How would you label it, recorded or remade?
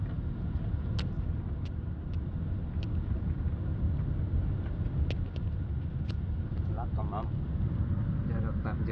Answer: recorded